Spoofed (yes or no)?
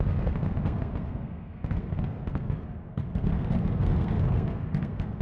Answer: yes